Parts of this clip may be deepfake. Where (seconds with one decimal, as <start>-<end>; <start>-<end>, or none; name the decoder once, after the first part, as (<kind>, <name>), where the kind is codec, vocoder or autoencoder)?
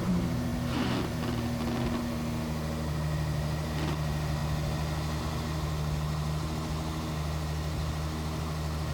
none